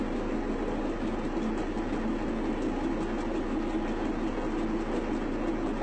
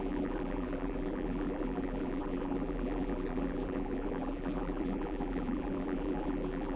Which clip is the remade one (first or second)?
second